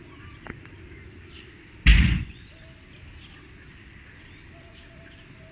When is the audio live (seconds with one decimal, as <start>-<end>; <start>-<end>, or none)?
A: 0.0-1.9; 2.5-5.5